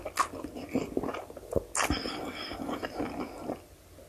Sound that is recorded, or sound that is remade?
recorded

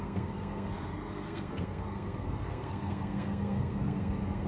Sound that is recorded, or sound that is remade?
remade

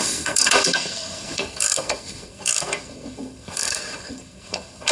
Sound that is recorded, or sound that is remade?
remade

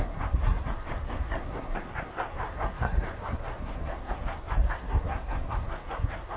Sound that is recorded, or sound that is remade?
remade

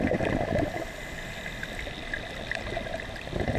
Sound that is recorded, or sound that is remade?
recorded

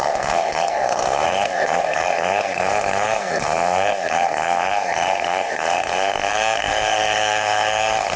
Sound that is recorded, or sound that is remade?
remade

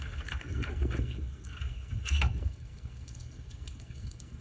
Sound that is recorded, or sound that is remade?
remade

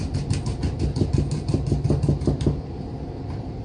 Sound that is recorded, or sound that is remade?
recorded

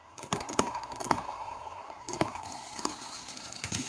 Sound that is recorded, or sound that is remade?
remade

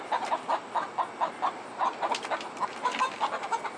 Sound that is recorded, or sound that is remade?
recorded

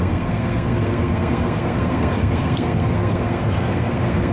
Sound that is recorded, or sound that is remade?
remade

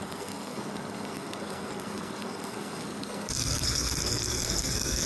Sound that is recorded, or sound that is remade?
remade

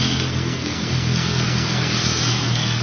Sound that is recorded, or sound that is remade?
remade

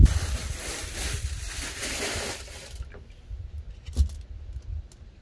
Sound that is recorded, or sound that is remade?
recorded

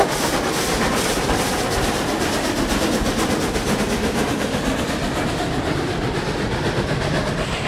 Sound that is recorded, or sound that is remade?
recorded